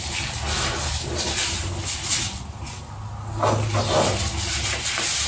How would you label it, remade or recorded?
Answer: recorded